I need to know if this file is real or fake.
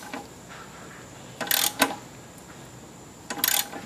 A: real